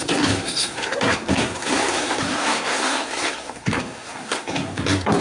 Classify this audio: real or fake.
fake